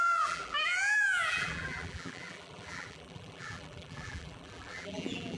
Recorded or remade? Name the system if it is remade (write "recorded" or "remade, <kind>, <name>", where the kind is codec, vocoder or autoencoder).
remade, vocoder, BigVGAN v2